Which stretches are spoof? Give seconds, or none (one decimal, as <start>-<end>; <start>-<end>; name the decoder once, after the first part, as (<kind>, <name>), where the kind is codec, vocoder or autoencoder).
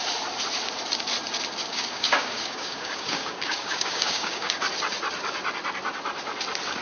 1.7-4.6 (codec, DAC)